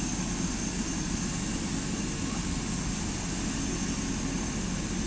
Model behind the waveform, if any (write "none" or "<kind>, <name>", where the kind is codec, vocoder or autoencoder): none